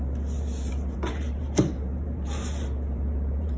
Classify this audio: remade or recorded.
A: remade